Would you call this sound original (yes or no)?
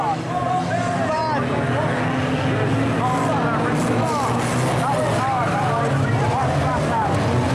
yes